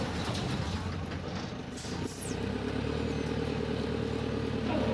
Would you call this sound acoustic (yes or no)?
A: yes